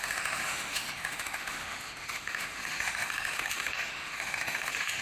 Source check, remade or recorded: remade